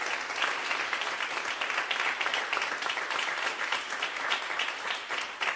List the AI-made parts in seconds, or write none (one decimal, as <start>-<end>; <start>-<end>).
2.3-5.1